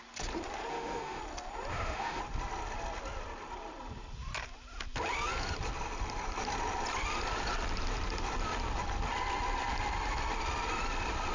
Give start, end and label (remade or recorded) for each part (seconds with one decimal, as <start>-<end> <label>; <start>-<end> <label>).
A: 0.0-0.7 recorded; 0.7-1.2 remade; 1.2-1.7 recorded; 1.7-2.2 remade; 2.2-11.3 recorded